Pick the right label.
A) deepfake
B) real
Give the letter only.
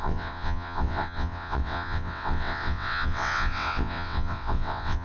A